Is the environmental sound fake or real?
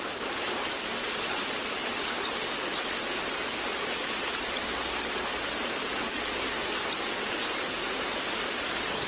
real